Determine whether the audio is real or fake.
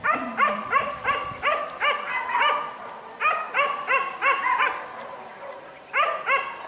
real